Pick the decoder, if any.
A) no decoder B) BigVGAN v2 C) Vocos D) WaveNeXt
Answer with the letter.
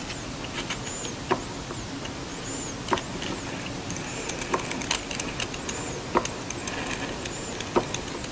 A